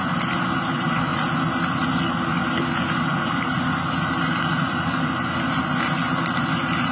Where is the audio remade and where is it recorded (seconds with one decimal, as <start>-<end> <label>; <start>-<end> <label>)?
0.0-6.9 recorded